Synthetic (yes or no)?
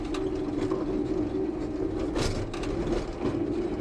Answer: no